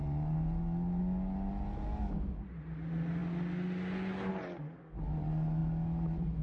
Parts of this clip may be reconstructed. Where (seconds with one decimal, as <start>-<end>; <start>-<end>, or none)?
none